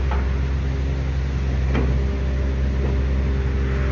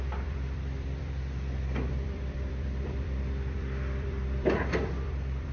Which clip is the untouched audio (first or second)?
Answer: first